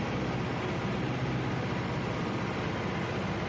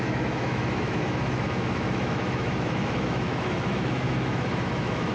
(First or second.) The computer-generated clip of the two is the second